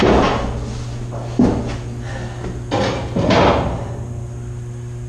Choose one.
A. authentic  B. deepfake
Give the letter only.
A